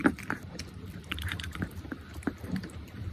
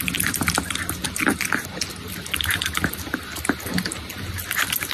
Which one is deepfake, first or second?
first